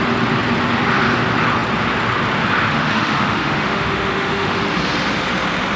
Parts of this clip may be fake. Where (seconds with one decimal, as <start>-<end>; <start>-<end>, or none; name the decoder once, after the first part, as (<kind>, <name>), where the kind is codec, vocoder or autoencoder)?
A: 2.7-4.6 (autoencoder, DAC-VAE)